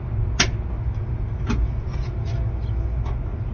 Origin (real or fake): real